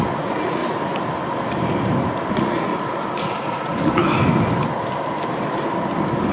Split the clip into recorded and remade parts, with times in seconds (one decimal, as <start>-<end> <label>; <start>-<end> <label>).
0.0-0.6 remade; 0.6-2.3 recorded; 2.3-2.7 remade; 2.7-3.5 recorded; 3.5-4.0 remade; 4.0-6.3 recorded